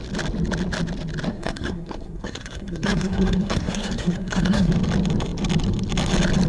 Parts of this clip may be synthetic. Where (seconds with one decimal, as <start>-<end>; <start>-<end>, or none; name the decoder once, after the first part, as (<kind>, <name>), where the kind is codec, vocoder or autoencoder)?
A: 1.3-4.7 (codec, SNAC)